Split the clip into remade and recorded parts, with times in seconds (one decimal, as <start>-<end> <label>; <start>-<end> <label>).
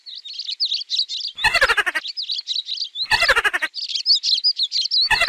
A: 0.0-5.3 recorded